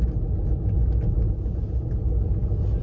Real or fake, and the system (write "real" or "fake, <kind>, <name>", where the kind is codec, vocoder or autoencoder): real